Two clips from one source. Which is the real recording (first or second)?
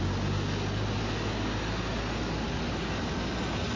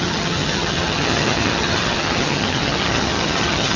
first